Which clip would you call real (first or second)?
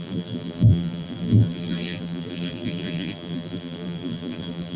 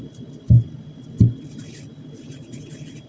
second